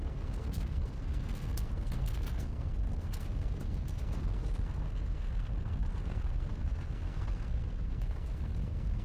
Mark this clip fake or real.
fake